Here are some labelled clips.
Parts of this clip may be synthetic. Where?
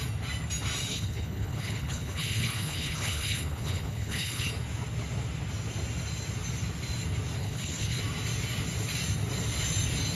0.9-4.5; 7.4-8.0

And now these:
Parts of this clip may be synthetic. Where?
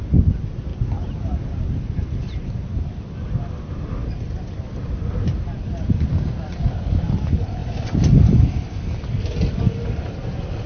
none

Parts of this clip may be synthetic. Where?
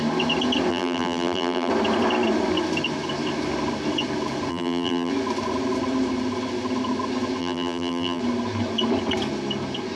0.7-1.7; 4.5-5.1; 7.4-8.2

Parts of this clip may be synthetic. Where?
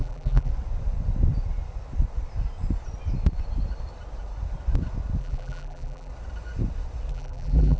0.0-0.5; 5.2-6.1; 7.1-7.8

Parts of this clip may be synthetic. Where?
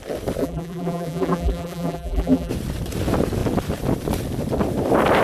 0.4-2.5